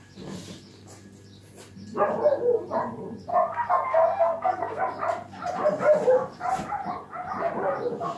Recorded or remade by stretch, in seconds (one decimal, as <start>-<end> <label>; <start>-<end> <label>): 0.0-3.3 recorded; 3.3-4.8 remade; 4.8-8.2 recorded